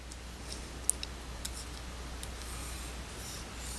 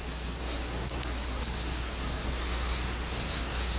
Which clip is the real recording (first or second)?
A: first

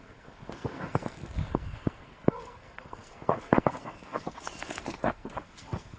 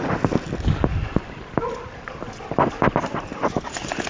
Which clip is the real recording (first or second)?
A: second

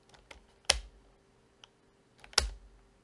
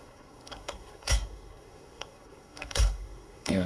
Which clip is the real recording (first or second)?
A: first